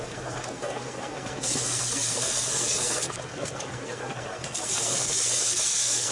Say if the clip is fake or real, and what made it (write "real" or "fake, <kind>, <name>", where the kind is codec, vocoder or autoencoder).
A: fake, codec, SNAC